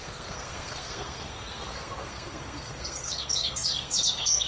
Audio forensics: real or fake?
fake